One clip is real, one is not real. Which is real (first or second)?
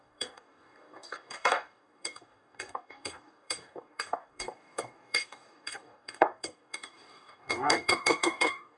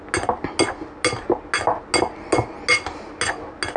second